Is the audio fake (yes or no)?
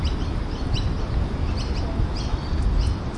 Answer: no